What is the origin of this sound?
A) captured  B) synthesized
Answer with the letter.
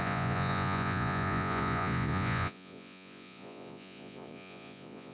B